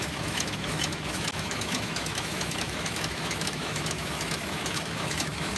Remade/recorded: remade